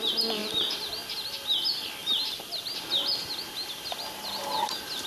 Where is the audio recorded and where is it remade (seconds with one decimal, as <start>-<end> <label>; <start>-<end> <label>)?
0.0-0.4 recorded; 0.4-0.9 remade; 0.9-5.1 recorded